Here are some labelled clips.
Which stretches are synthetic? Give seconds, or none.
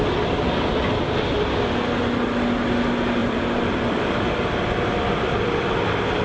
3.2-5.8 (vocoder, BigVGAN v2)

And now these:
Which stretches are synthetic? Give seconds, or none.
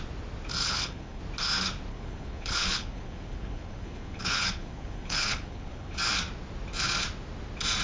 0.6-1.2 (codec, HILCodec); 1.9-6.0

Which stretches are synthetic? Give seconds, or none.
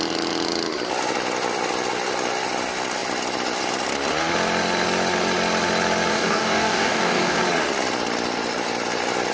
6.1-7.4 (codec, DAC)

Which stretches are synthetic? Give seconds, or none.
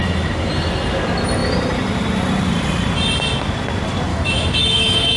0.0-0.5 (autoencoder, DAC-VAE); 4.1-5.2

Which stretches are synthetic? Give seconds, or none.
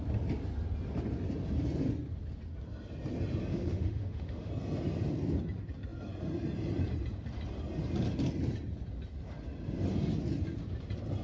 3.5-4.5 (autoencoder, DAC-VAE)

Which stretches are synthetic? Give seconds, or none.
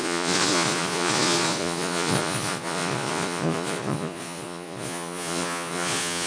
0.0-6.3 (vocoder, Vocos)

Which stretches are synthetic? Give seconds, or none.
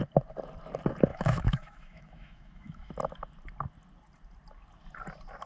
1.1-2.9 (autoencoder, DAC-VAE)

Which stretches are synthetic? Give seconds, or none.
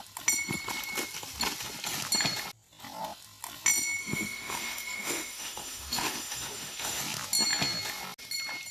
4.0-7.0 (autoencoder, DAC-VAE)